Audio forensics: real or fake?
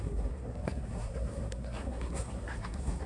fake